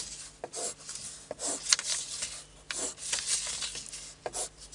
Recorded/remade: recorded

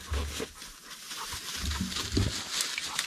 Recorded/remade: recorded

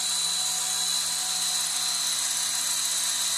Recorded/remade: recorded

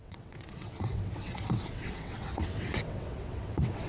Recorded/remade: remade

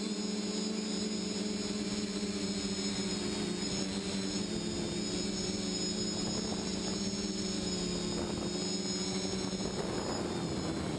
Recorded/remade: recorded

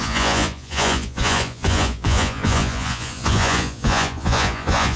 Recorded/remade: remade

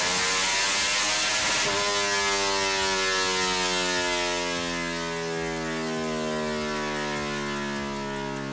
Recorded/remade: recorded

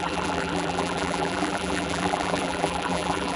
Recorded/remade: remade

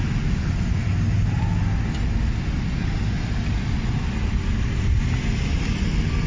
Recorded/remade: recorded